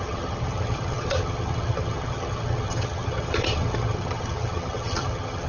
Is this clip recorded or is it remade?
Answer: remade